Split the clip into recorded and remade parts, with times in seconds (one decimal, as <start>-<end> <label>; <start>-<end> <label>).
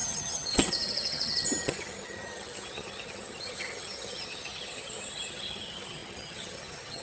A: 0.0-7.0 remade